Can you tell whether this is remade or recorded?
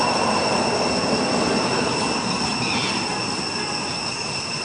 recorded